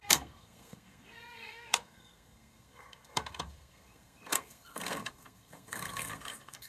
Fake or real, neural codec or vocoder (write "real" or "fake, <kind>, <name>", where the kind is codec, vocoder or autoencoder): fake, codec, SNAC